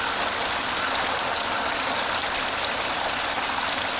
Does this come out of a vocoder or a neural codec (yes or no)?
no